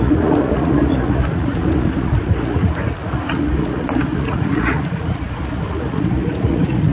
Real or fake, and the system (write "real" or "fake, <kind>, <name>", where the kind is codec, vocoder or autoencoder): fake, vocoder, Vocos